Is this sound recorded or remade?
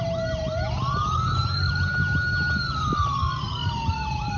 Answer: recorded